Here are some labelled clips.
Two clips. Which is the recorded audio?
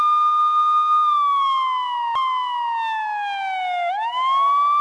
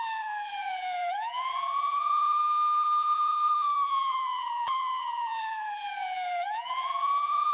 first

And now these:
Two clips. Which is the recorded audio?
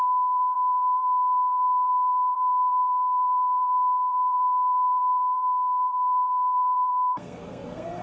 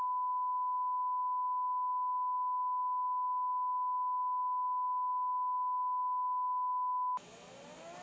second